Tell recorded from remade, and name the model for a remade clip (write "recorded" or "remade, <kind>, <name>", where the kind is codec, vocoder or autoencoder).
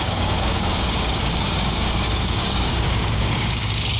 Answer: remade, codec, DAC